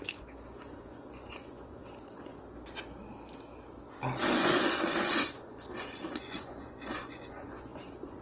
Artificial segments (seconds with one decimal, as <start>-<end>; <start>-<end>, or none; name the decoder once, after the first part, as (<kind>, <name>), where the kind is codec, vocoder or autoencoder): 0.0-2.3 (vocoder, Vocos); 4.2-8.2